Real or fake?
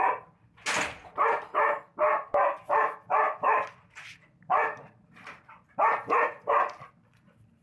real